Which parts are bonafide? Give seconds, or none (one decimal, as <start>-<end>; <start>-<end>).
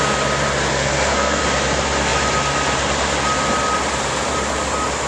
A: 0.0-0.7; 1.4-5.1